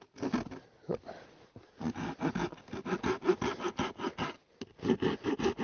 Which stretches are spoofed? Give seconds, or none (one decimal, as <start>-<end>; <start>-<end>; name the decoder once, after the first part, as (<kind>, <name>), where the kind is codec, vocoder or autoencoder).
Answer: none